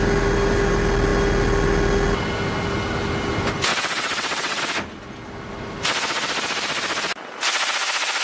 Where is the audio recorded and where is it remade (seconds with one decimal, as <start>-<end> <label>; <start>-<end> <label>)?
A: 0.0-3.7 recorded; 3.7-4.6 remade; 4.6-8.2 recorded